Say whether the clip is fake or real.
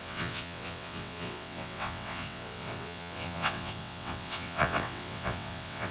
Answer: fake